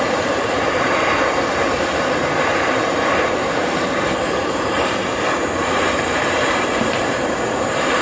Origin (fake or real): fake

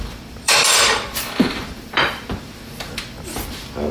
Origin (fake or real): fake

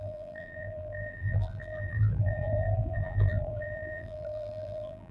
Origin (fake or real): fake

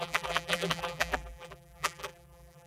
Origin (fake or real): fake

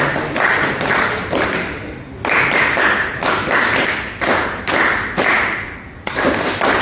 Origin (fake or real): real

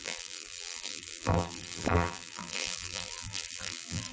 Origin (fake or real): fake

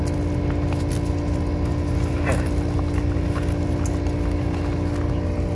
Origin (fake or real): real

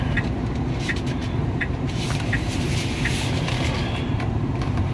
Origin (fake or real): fake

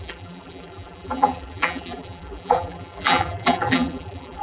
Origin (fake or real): fake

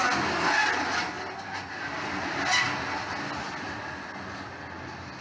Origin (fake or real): real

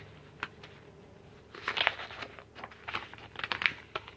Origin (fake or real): fake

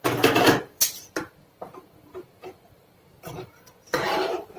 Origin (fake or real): fake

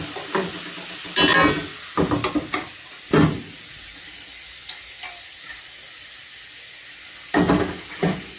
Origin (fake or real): real